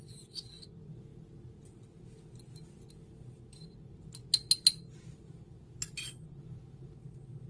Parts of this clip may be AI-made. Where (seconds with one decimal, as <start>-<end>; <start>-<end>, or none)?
0.0-1.1; 2.9-4.2; 4.8-7.0

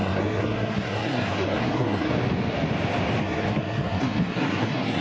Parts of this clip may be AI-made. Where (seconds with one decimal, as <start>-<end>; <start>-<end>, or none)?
0.0-2.1; 3.2-5.0

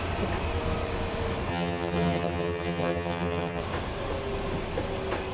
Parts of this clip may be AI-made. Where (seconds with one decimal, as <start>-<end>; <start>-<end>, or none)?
1.5-3.6

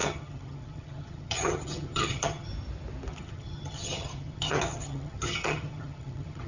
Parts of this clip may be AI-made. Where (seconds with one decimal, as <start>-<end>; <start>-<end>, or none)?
0.0-2.5; 3.1-6.5

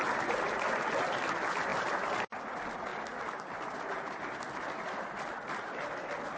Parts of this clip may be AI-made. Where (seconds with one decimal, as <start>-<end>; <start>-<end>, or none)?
none

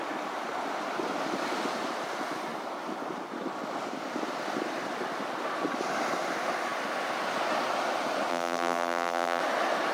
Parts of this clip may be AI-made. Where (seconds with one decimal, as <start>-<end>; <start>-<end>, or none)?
8.3-9.4

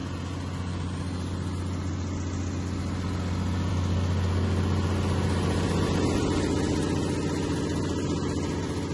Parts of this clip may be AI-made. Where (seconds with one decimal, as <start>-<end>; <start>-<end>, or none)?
none

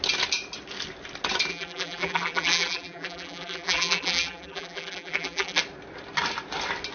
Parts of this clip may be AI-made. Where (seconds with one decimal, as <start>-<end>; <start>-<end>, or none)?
1.5-5.6